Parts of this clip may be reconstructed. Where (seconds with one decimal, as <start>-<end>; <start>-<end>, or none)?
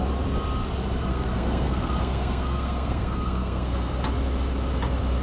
1.1-4.0